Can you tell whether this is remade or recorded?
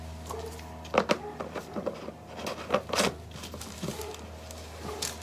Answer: recorded